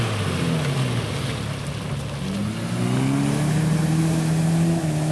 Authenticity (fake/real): real